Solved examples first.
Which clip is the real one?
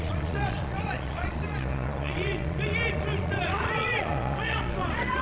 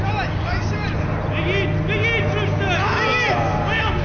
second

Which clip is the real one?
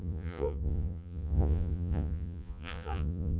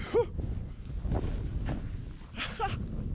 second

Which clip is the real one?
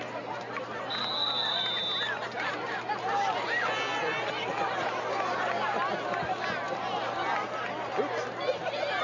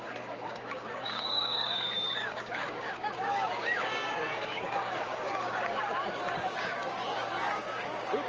first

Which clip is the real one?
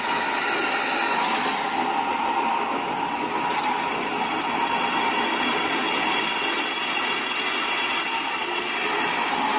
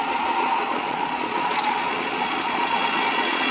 first